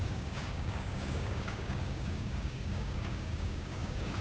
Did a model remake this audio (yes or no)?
yes